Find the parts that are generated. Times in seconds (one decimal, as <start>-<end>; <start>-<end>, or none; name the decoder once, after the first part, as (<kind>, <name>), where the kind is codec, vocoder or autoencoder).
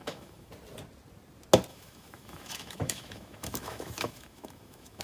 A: 0.0-0.5 (autoencoder, DAC-VAE); 1.7-5.0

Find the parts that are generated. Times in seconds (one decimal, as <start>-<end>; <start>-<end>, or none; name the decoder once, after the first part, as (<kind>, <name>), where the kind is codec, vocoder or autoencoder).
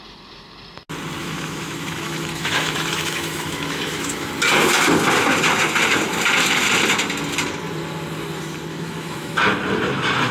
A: 1.2-4.3 (autoencoder, DAC-VAE); 8.7-9.4